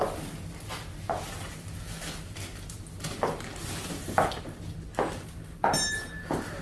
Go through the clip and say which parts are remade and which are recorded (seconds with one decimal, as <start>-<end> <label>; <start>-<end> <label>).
0.0-6.6 recorded